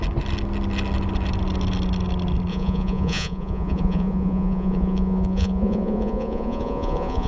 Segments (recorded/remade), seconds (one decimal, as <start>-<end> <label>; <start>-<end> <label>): 0.0-2.5 recorded; 2.5-7.3 remade